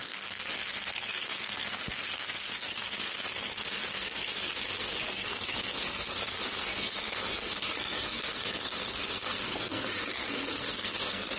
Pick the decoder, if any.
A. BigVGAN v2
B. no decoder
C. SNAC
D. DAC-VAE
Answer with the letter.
C